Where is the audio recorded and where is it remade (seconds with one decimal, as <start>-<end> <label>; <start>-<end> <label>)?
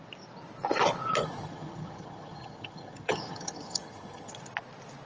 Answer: 0.0-1.2 recorded; 1.2-4.3 remade; 4.3-5.1 recorded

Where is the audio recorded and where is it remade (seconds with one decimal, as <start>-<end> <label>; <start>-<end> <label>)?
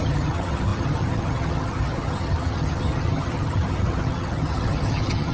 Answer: 0.0-5.3 remade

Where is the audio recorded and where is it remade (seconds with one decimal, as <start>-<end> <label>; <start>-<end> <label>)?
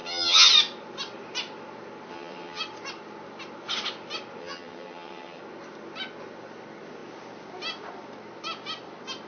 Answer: 0.0-0.5 remade; 0.5-2.1 recorded; 2.1-2.6 remade; 2.6-4.4 recorded; 4.4-5.4 remade; 5.4-9.3 recorded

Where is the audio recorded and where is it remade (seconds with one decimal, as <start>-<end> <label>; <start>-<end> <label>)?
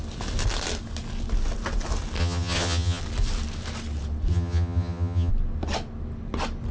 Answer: 0.0-2.2 recorded; 2.2-3.0 remade; 3.0-4.3 recorded; 4.3-5.3 remade; 5.3-6.7 recorded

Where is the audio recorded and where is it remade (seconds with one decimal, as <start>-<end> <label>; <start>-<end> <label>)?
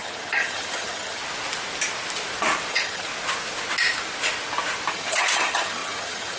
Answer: 0.0-1.2 remade; 1.2-2.7 recorded; 2.7-3.1 remade; 3.1-4.9 recorded; 4.9-6.4 remade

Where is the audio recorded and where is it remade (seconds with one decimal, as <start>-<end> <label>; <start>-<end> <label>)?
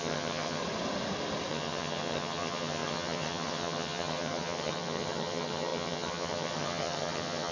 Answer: 0.0-0.6 remade; 0.6-1.5 recorded; 1.5-7.5 remade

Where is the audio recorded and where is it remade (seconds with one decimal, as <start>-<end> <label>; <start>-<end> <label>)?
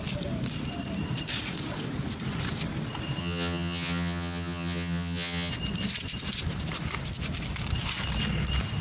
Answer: 0.0-3.2 recorded; 3.2-5.5 remade; 5.5-8.8 recorded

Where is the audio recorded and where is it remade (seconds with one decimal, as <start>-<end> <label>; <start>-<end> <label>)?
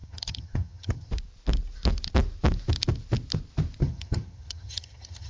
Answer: 0.0-1.1 remade; 1.1-3.8 recorded; 3.8-5.3 remade